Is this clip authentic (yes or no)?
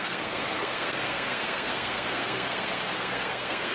no